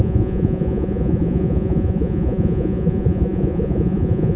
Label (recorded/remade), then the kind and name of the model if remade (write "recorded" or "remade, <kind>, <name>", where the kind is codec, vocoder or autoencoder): remade, vocoder, Vocos